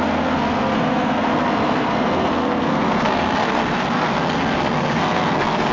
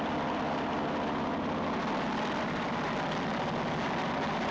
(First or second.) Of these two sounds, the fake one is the first